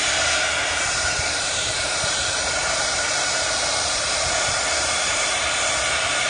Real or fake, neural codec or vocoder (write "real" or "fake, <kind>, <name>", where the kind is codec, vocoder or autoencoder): fake, vocoder, BigVGAN v2